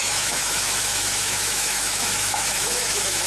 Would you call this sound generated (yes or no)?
yes